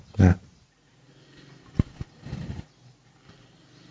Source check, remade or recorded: recorded